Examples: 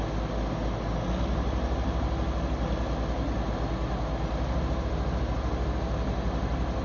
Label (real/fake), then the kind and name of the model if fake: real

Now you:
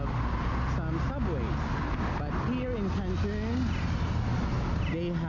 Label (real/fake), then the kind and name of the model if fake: real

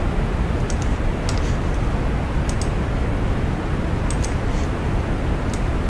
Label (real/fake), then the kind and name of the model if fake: real